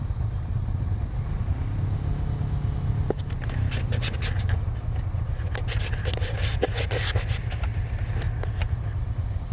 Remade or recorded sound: recorded